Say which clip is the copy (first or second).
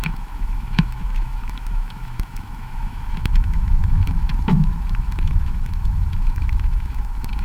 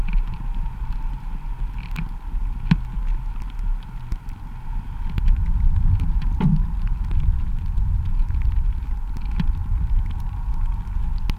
first